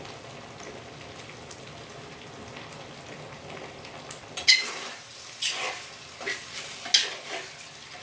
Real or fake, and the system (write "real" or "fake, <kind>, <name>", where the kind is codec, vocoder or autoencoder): real